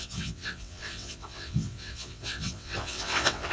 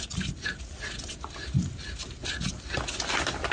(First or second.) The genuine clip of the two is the second